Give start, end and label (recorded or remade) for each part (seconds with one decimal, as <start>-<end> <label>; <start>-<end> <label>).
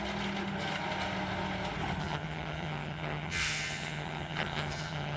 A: 0.0-2.0 recorded; 2.0-5.2 remade